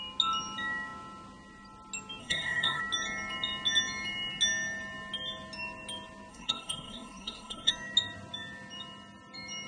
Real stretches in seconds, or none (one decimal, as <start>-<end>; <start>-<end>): 0.0-2.2; 2.8-6.3; 7.7-9.7